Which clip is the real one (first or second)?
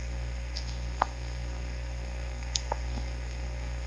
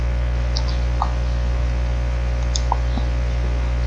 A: second